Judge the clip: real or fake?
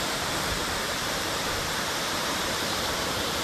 fake